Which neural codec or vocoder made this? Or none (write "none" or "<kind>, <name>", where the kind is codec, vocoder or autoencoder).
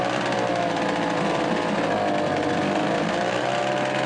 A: none